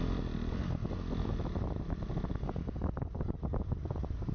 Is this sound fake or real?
real